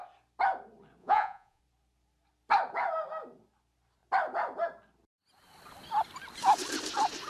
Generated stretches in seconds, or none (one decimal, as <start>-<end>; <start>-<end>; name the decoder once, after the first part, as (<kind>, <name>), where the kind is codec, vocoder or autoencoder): 1.0-1.6 (vocoder, Vocos)